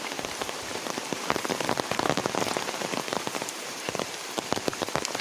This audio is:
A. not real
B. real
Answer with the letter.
A